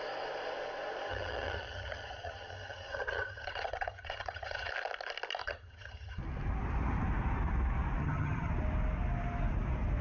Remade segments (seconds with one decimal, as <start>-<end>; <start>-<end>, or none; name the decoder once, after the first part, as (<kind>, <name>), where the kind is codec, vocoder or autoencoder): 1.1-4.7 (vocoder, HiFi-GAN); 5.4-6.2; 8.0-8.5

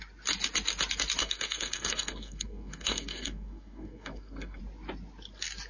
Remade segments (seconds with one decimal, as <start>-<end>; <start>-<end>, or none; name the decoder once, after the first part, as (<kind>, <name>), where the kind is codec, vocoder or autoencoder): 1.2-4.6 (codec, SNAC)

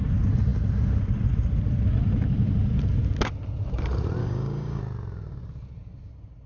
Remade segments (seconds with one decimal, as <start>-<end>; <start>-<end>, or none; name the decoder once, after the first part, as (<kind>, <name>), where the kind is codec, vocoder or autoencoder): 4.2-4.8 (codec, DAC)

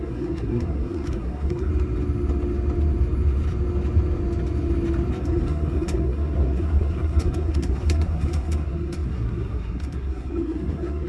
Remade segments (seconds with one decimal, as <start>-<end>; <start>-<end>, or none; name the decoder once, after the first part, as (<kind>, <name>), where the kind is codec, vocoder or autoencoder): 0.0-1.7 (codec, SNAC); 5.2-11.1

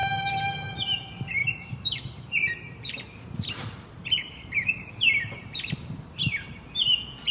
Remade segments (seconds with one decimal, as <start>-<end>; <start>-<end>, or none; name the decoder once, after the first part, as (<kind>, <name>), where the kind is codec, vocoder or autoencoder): 0.0-0.7 (vocoder, BigVGAN v2); 1.4-4.9; 5.4-6.7

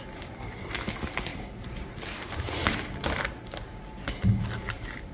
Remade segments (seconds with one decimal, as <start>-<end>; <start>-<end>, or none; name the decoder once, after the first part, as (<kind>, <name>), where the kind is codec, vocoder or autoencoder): none